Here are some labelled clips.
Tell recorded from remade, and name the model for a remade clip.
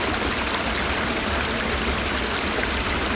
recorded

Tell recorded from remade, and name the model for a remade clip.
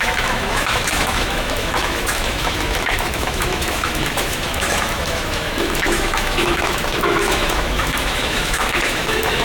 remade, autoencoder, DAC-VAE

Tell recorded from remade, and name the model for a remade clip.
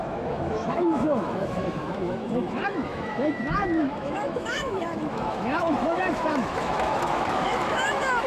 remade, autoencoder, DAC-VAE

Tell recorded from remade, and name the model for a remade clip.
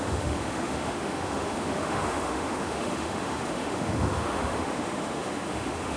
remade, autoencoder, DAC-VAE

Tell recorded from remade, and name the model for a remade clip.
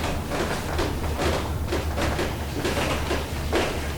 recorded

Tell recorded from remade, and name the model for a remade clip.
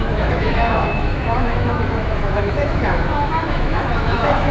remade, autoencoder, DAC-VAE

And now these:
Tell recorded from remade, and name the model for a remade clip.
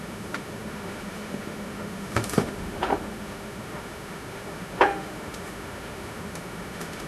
remade, autoencoder, DAC-VAE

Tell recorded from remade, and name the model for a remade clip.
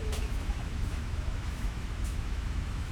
remade, autoencoder, DAC-VAE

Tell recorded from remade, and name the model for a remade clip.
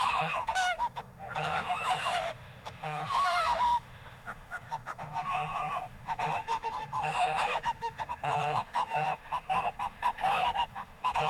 remade, autoencoder, DAC-VAE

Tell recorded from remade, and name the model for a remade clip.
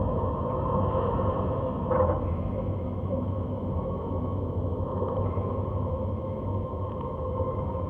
remade, autoencoder, DAC-VAE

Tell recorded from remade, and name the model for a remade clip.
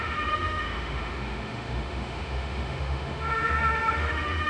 remade, autoencoder, DAC-VAE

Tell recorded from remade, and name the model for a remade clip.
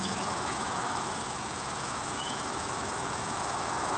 remade, autoencoder, DAC-VAE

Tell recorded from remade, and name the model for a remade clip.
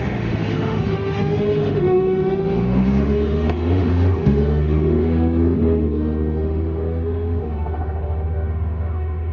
remade, autoencoder, DAC-VAE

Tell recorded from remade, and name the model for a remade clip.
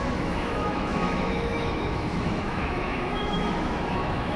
remade, autoencoder, DAC-VAE